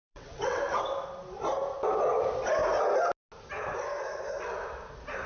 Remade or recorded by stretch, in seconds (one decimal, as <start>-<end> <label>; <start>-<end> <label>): 0.0-0.6 remade; 0.6-5.3 recorded